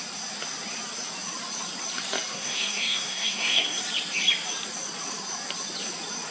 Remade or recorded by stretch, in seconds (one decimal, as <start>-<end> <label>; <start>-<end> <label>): 0.0-2.3 recorded; 2.3-3.8 remade; 3.8-6.3 recorded